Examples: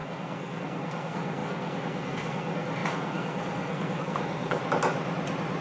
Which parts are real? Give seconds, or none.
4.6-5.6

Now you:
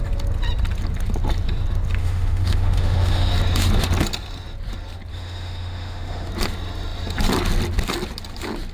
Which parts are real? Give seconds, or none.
0.0-2.0; 3.3-5.1; 6.3-8.7